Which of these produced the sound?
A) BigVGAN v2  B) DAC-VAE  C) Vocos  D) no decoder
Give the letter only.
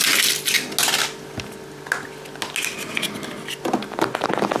D